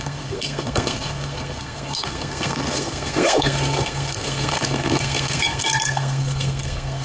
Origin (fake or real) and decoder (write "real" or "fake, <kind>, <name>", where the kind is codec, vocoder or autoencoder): fake, codec, SNAC